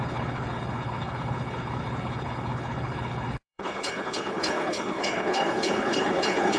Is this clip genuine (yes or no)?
no